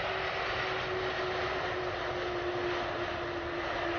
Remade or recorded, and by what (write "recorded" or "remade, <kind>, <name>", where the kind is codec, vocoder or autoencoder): recorded